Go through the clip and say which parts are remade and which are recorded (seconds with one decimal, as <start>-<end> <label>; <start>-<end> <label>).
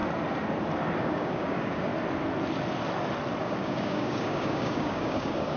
0.0-1.0 recorded; 1.0-1.9 remade; 1.9-3.4 recorded; 3.4-5.6 remade